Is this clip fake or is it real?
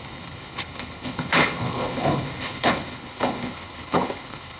fake